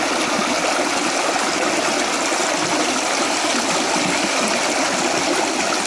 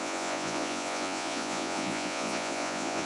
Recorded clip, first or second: first